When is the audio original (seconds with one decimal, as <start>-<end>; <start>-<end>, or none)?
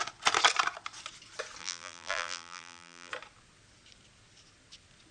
0.0-1.6; 3.1-5.1